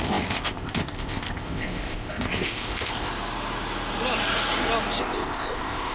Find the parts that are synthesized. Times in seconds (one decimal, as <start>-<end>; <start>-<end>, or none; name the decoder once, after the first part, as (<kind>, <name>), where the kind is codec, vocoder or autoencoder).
0.0-3.1 (codec, ZipCodec); 5.0-5.9